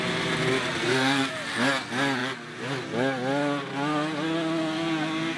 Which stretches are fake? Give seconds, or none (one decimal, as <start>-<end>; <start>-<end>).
0.8-1.3